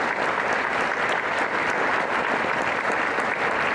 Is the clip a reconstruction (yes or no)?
no